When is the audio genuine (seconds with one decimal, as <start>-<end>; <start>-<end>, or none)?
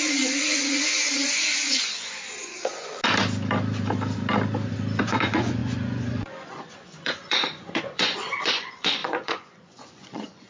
2.9-5.0